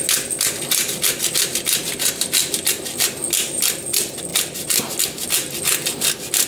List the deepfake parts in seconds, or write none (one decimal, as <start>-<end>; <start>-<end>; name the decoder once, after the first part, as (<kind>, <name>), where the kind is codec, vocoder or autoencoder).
none